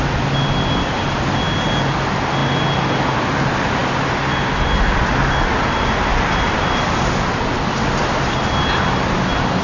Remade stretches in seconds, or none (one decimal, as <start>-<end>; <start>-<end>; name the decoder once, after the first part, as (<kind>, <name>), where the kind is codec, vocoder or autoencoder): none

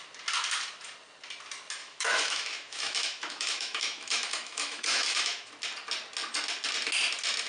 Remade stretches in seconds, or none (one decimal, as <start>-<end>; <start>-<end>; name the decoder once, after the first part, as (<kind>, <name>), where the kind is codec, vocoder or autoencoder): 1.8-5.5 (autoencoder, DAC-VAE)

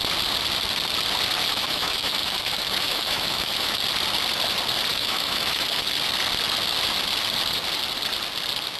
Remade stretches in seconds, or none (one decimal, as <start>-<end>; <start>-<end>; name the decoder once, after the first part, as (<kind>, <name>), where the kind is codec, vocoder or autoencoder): 1.5-3.8 (autoencoder, DAC-VAE); 4.9-5.9

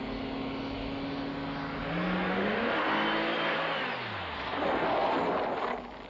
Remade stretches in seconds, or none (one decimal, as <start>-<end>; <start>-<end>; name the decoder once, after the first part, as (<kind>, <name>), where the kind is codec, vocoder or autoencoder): 2.3-2.9 (autoencoder, DAC-VAE)

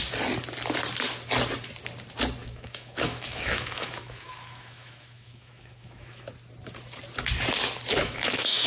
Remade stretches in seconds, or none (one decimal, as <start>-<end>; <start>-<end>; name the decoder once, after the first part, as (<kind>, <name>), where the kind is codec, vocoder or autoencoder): 2.4-6.3 (autoencoder, DAC-VAE); 8.0-8.7

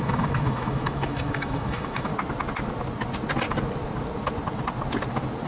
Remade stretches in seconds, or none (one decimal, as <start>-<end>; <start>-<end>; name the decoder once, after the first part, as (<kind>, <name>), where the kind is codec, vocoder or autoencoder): 0.0-2.1 (autoencoder, DAC-VAE)

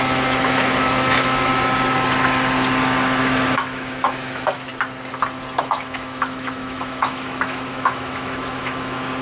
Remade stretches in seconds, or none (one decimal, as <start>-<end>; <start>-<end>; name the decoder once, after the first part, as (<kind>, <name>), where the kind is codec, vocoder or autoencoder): 0.0-1.5 (autoencoder, DAC-VAE); 3.2-4.7; 5.6-9.2